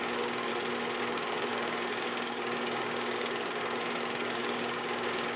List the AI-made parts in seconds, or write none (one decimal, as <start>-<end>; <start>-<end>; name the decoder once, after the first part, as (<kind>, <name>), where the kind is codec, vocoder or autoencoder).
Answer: 0.0-0.5 (codec, DAC); 1.0-5.4